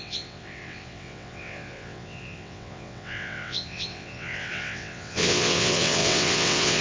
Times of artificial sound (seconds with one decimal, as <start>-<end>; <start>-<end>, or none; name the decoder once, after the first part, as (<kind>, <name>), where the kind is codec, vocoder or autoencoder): 0.0-6.8 (vocoder, WaveNeXt)